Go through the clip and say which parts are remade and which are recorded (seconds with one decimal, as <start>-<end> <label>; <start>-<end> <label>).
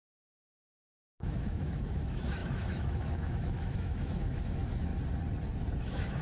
0.0-4.9 remade; 4.9-5.8 recorded; 5.8-6.2 remade